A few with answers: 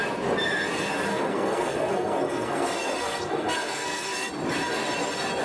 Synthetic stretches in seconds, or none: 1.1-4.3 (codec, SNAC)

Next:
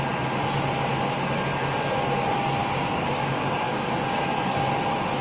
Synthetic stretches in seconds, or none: 2.6-4.6 (codec, DAC)

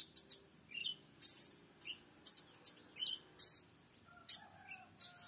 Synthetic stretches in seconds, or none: none

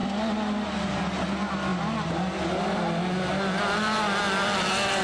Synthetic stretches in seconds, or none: none